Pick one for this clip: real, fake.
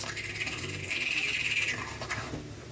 real